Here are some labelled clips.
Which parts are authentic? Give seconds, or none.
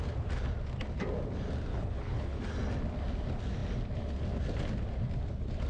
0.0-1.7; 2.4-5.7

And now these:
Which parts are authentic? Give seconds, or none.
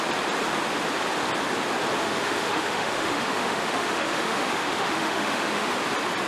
0.0-2.0; 5.8-6.3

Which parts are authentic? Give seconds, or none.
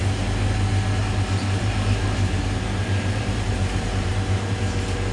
0.0-1.0; 4.1-5.1